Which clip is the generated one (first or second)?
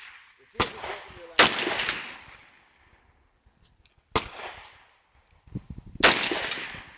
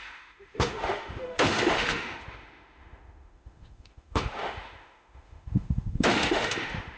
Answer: second